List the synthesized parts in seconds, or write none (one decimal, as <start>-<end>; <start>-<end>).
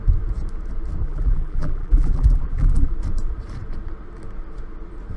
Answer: 1.0-2.9